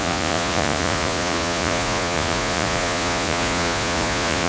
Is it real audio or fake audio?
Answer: fake